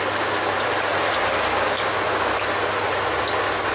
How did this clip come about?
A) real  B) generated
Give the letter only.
A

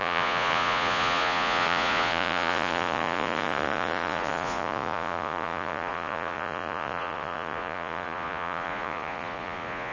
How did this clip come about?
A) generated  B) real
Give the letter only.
A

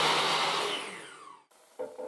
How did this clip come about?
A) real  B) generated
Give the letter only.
A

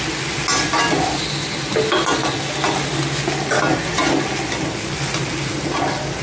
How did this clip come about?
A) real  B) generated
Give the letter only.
A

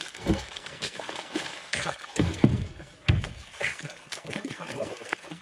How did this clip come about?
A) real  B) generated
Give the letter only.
B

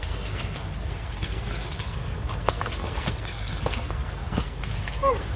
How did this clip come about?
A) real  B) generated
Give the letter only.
B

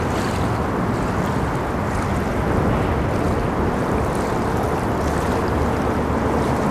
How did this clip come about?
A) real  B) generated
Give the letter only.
A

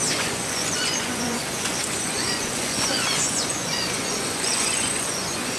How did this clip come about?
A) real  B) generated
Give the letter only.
B